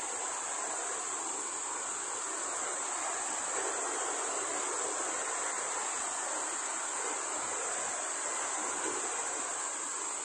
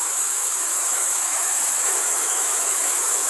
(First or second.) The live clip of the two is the first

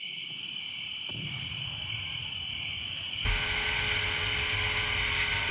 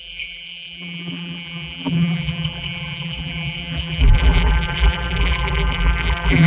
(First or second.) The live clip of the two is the first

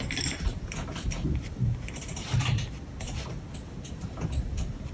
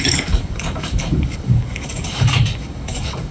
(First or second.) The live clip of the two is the first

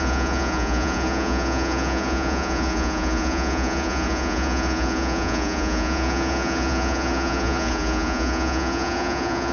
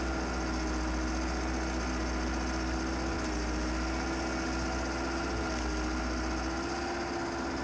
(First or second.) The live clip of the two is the second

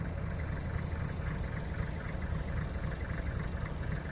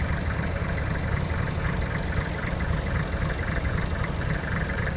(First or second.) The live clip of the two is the first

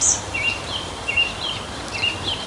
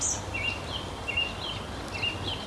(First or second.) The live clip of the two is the second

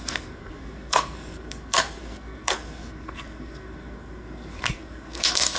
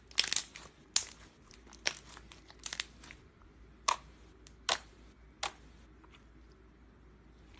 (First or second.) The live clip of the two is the second